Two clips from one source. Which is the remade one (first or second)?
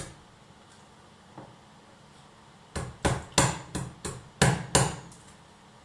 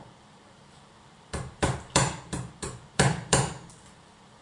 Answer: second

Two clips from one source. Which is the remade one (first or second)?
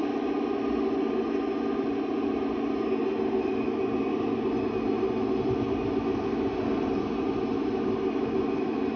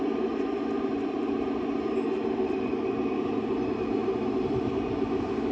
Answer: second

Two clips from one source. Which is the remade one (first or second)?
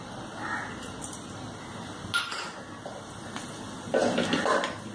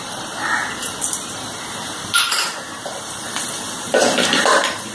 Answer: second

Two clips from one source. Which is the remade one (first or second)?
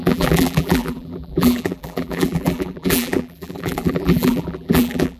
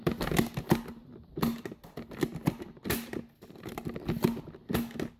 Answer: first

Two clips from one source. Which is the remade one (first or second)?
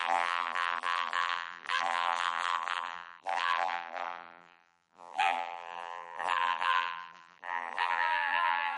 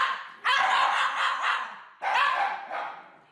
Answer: first